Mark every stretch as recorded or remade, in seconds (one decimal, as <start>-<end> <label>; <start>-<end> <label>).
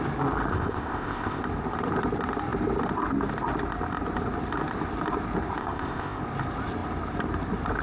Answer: 0.0-0.5 recorded; 0.5-1.4 remade; 1.4-5.6 recorded; 5.6-6.2 remade; 6.2-7.8 recorded